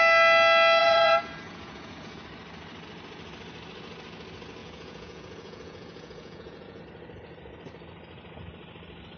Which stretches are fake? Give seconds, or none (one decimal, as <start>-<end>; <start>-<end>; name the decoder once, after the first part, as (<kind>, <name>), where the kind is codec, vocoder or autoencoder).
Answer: 0.8-2.2 (vocoder, Vocos); 4.6-6.8